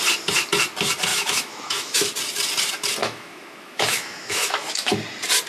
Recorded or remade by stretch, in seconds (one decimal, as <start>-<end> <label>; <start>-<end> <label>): 0.0-1.1 recorded; 1.1-2.1 remade; 2.1-3.0 recorded; 3.0-4.9 remade; 4.9-5.5 recorded